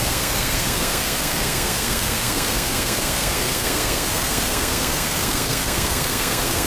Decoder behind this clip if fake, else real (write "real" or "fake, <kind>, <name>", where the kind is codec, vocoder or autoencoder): fake, codec, SNAC